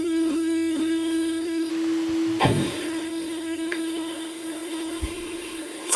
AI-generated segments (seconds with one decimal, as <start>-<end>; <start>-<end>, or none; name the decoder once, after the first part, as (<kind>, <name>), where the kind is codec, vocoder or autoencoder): 0.0-1.7 (codec, SNAC); 2.4-6.0